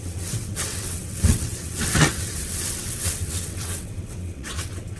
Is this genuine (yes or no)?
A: no